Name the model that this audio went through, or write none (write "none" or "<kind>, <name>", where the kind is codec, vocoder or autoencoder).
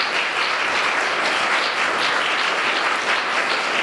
none